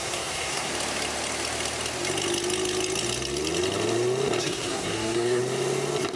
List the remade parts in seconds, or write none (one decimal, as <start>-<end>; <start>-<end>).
0.0-0.7; 4.4-5.4